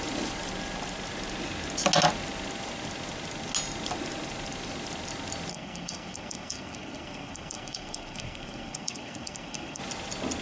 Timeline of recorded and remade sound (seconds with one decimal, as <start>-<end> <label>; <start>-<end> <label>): 0.0-5.5 recorded; 5.5-9.8 remade; 9.8-10.4 recorded